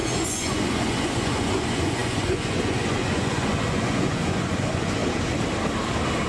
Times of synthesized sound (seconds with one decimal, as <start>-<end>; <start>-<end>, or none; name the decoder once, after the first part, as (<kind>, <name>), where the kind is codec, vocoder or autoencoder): 0.0-5.0 (vocoder, Vocos)